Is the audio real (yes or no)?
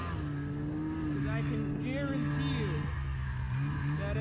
yes